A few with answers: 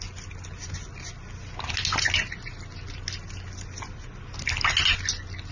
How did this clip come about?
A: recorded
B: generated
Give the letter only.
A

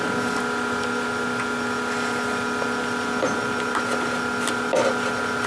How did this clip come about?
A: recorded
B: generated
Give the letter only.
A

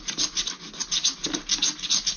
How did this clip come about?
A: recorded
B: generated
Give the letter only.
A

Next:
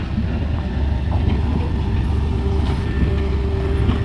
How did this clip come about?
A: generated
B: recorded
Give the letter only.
B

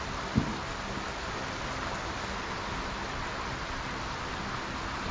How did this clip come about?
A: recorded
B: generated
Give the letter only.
A